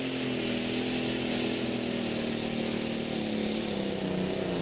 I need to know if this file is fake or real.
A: real